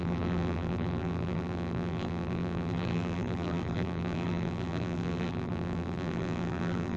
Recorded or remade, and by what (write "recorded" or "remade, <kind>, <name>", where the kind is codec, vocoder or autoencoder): remade, vocoder, BigVGAN v2